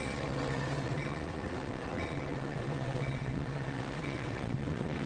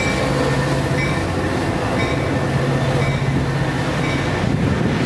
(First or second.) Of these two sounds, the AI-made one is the first